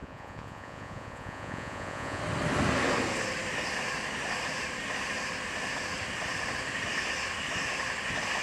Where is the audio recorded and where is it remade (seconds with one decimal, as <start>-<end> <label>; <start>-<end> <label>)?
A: 0.0-2.2 remade; 2.2-8.4 recorded